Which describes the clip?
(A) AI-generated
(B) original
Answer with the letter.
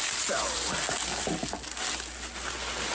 B